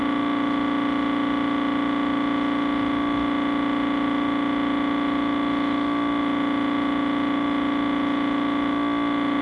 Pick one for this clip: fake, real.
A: real